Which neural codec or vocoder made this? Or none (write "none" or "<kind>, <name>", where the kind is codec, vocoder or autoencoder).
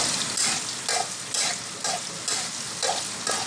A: none